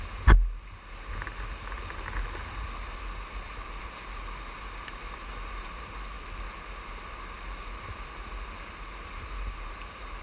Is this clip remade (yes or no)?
no